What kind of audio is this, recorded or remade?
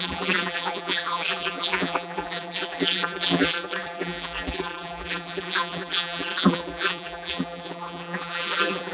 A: remade